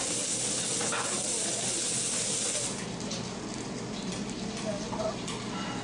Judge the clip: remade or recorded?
recorded